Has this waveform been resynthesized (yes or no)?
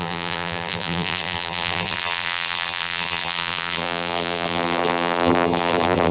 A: yes